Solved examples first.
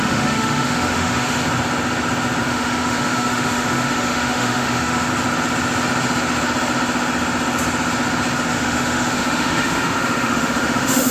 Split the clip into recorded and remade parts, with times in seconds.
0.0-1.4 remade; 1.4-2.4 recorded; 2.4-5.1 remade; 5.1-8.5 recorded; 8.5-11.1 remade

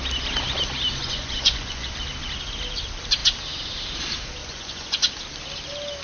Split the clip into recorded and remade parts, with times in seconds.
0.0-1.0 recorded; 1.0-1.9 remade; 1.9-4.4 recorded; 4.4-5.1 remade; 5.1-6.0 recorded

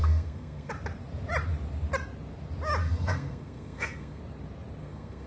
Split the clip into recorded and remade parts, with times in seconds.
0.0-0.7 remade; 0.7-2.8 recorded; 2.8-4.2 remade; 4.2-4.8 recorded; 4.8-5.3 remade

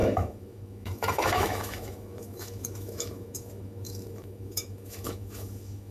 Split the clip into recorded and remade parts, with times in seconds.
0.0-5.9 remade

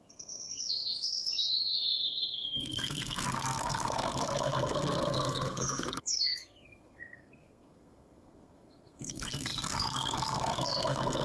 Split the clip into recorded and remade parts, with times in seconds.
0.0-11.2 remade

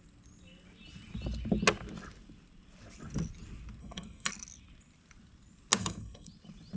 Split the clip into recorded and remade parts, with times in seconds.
0.0-3.8 recorded; 3.8-4.3 remade; 4.3-5.8 recorded; 5.8-6.3 remade; 6.3-6.8 recorded

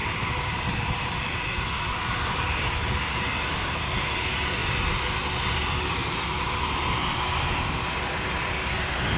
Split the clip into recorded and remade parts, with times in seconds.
0.0-2.4 remade; 2.4-9.2 recorded

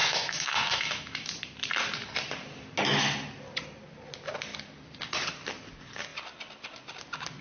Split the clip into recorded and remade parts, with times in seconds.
0.0-1.3 remade; 1.3-7.4 recorded